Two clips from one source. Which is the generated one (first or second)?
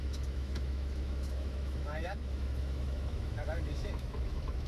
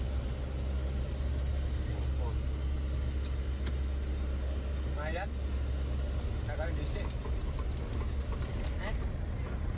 first